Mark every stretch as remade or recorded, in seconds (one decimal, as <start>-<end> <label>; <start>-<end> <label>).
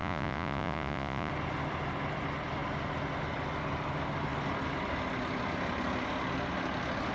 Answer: 0.0-1.3 remade; 1.3-7.1 recorded